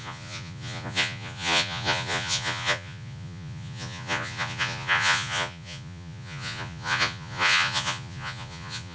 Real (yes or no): no